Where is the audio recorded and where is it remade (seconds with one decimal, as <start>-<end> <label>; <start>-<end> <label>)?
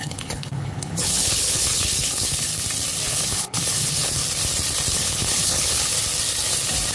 0.0-2.5 remade; 2.5-3.1 recorded; 3.1-4.2 remade; 4.2-4.9 recorded; 4.9-5.9 remade; 5.9-6.9 recorded